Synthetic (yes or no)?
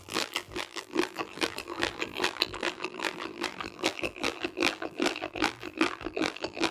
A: yes